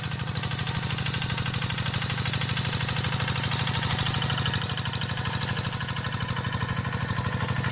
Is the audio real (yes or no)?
yes